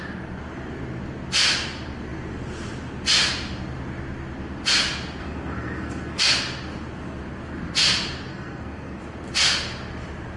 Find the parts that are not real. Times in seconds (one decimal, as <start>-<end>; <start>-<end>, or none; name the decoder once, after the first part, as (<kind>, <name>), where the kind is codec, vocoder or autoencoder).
5.2-6.2 (codec, SNAC); 8.3-9.0